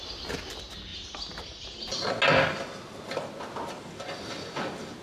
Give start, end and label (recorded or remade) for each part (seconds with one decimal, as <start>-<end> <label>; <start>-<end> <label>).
0.0-0.9 recorded; 0.9-2.1 remade; 2.1-5.0 recorded

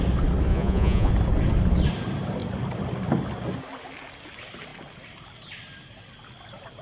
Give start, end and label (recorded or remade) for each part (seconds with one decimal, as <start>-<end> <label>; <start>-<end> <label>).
0.0-0.5 recorded; 0.5-1.1 remade; 1.1-6.8 recorded

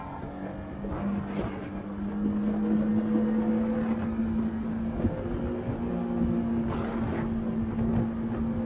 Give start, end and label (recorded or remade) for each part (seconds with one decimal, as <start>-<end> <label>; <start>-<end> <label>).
0.0-8.7 recorded